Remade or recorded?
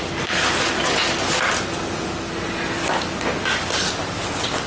recorded